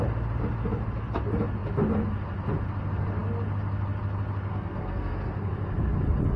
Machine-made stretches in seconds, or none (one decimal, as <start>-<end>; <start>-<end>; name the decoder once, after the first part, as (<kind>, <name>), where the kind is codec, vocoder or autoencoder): 4.5-5.1 (codec, SNAC)